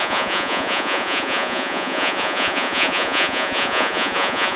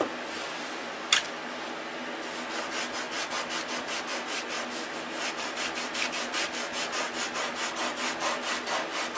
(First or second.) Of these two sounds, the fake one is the first